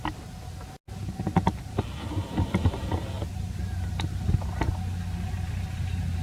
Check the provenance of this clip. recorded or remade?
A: recorded